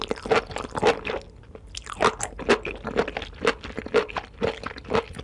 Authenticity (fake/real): real